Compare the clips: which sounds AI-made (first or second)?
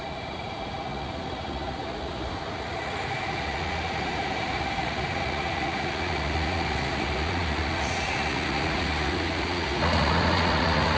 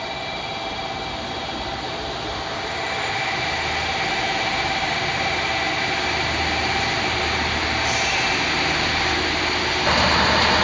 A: first